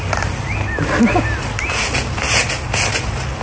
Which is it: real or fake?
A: real